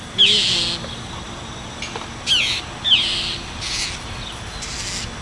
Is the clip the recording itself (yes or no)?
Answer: yes